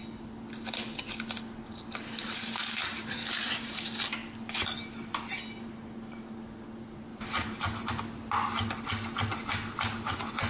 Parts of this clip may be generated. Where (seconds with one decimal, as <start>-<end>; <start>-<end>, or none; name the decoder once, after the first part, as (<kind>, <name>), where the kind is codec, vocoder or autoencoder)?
2.9-3.7 (vocoder, BigVGAN v2); 7.1-7.9